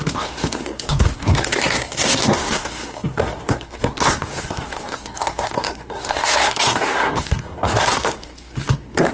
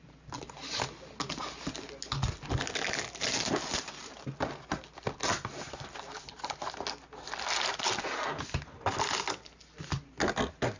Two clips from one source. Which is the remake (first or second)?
first